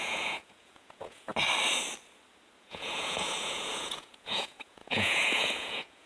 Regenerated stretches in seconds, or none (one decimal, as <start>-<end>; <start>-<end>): 0.0-1.3; 2.6-6.1